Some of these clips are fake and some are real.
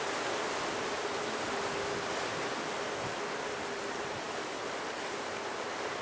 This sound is real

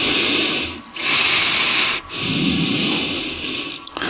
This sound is real